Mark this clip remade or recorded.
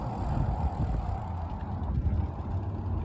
recorded